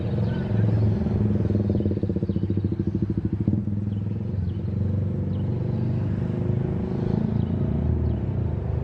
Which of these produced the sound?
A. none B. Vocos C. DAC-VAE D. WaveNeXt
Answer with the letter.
A